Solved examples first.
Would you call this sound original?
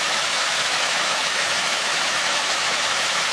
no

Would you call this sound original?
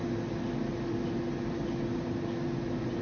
yes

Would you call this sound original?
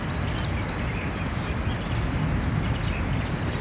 yes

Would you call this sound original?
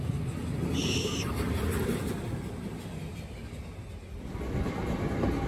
yes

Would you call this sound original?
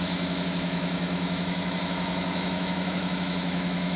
no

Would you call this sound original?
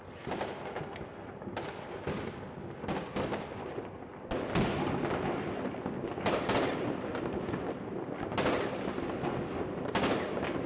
yes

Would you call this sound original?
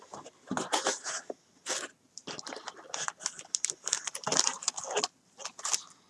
yes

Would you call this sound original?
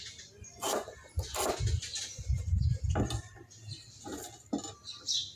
yes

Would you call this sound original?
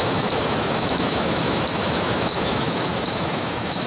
no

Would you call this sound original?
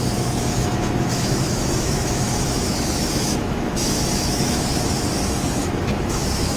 no